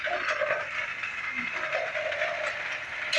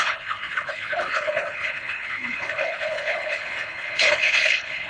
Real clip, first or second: first